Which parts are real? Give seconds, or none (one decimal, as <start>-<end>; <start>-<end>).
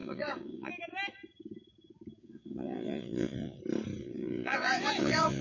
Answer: 0.7-2.2; 3.6-4.0